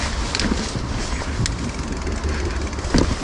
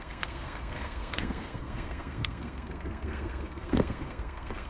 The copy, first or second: second